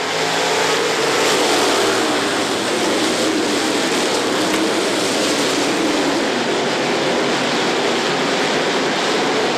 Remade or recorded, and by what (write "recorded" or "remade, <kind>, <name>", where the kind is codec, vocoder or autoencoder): recorded